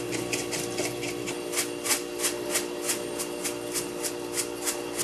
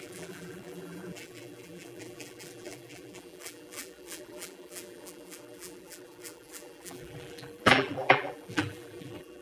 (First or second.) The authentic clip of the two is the first